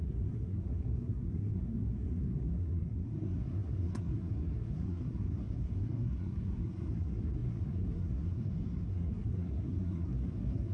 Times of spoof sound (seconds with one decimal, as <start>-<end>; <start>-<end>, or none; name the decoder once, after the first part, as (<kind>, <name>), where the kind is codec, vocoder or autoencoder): 0.0-10.7 (codec, SNAC)